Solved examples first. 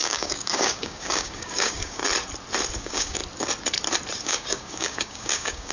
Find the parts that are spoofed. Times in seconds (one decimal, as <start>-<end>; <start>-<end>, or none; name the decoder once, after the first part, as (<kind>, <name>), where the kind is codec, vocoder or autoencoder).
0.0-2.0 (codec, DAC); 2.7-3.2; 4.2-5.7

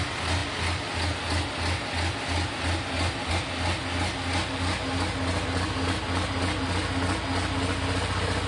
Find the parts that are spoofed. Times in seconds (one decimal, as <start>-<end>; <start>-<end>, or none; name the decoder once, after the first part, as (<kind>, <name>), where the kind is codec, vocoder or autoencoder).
none

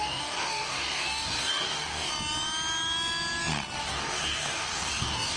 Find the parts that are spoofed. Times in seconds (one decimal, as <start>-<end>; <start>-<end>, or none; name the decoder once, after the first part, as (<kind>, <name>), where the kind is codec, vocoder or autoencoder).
0.0-2.1 (codec, DAC); 3.8-5.4